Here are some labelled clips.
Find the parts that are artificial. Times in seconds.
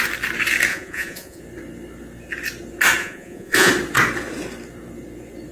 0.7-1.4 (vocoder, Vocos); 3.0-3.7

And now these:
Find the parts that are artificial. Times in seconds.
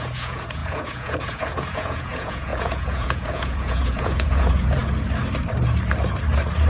0.0-4.8 (vocoder, Vocos)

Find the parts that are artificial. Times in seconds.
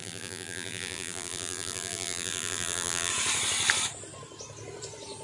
0.0-3.1 (vocoder, BigVGAN v2)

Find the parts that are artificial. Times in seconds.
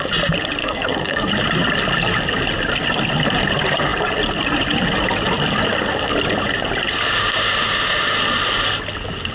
0.6-1.3 (codec, SNAC)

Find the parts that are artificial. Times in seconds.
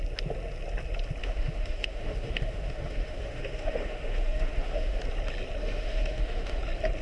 1.2-5.0 (autoencoder, DAC-VAE); 5.6-6.6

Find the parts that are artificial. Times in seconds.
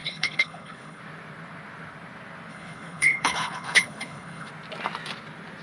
0.0-1.0 (codec, HILCodec); 2.5-4.5